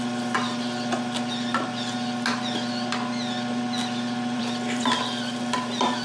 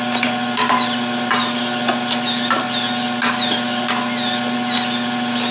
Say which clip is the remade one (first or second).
first